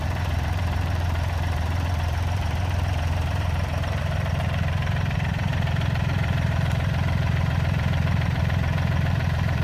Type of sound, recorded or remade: remade